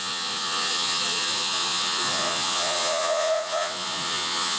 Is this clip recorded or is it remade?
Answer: remade